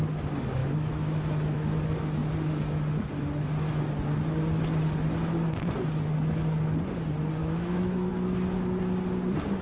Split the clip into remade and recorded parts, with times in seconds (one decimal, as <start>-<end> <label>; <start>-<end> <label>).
0.0-0.6 recorded; 0.6-1.8 remade; 1.8-7.4 recorded; 7.4-8.1 remade; 8.1-9.6 recorded